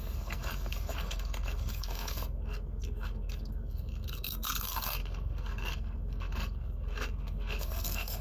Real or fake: fake